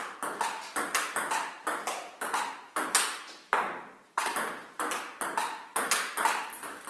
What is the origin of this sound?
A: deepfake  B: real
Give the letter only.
B